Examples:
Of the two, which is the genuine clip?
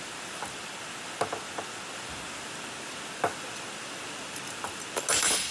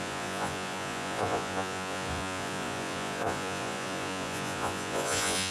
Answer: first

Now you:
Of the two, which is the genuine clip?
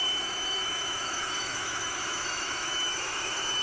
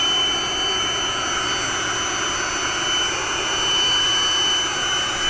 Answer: second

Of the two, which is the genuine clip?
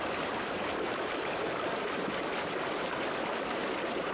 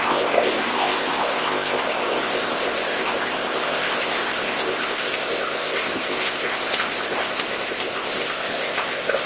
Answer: first